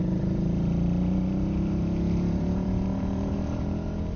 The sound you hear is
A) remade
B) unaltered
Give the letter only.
A